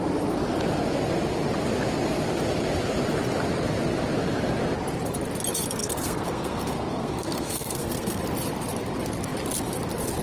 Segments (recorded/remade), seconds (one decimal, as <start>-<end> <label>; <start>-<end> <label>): 0.0-5.8 recorded; 5.8-8.2 remade; 8.2-10.2 recorded